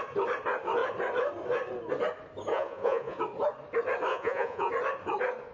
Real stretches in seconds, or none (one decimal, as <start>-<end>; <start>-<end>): 0.0-2.5; 3.2-4.1; 4.7-5.5